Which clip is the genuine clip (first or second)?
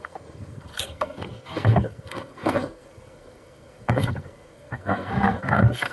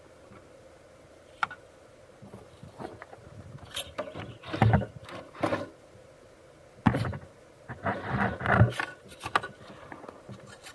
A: second